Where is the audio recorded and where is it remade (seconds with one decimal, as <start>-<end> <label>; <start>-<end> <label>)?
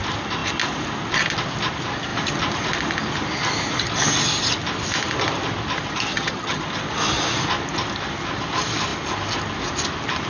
0.0-6.1 recorded; 6.1-6.6 remade; 6.6-10.3 recorded